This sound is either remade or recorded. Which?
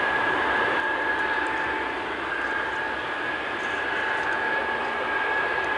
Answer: recorded